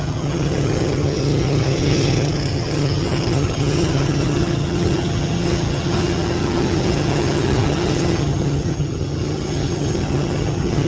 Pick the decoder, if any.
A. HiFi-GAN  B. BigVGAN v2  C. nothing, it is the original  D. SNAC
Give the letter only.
A